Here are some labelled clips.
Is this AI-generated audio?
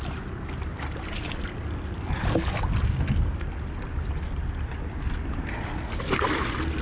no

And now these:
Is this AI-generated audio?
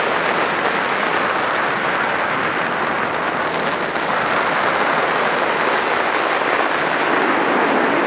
no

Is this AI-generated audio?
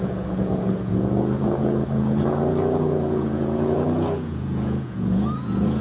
yes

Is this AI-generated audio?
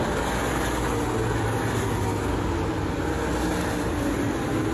no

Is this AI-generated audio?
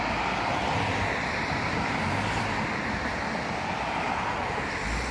no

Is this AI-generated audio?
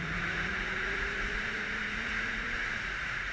yes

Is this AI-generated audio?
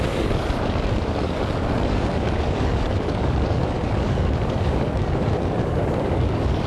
yes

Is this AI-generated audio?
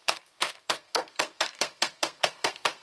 yes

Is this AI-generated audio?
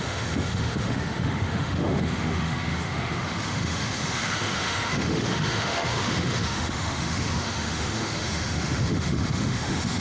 yes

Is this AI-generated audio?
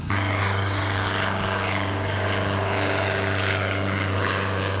yes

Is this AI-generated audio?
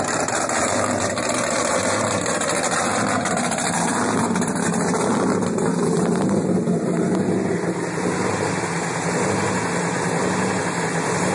no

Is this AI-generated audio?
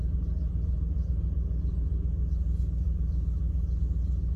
no